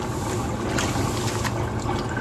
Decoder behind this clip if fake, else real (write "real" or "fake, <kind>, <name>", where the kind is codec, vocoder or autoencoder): real